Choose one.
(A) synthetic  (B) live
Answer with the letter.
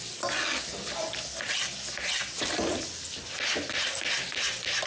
B